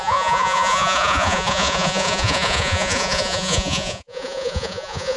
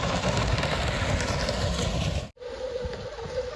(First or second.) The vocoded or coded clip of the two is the first